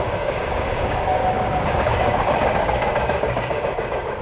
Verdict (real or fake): fake